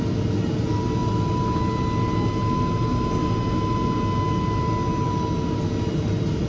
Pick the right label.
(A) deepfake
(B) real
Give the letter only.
B